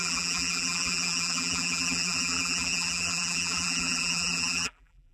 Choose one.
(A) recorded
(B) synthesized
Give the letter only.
B